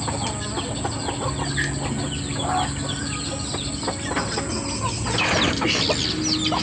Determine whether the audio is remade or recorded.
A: recorded